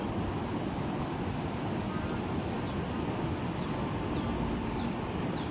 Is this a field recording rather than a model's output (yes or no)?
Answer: yes